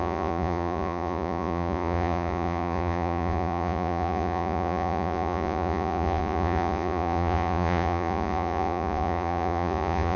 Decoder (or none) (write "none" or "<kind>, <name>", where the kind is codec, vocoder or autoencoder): vocoder, Vocos